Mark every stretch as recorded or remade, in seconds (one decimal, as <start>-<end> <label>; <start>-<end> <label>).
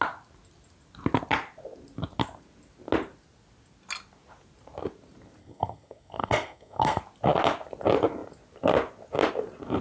0.0-5.4 recorded; 5.4-7.0 remade; 7.0-9.8 recorded